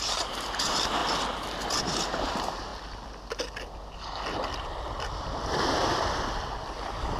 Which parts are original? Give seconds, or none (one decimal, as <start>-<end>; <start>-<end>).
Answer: 1.0-1.8; 2.7-7.2